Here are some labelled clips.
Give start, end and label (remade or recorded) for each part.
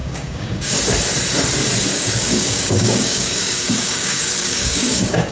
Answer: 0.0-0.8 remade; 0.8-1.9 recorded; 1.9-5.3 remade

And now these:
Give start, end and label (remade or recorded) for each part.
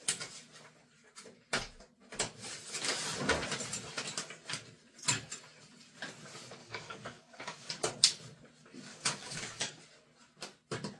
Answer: 0.0-6.6 recorded; 6.6-7.7 remade; 7.7-8.9 recorded; 8.9-9.8 remade; 9.8-11.0 recorded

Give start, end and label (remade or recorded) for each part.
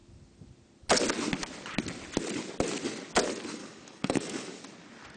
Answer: 0.0-3.6 recorded; 3.6-4.6 remade; 4.6-5.2 recorded